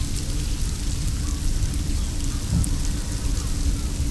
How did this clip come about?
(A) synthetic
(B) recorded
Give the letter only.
B